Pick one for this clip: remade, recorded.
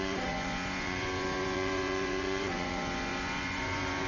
remade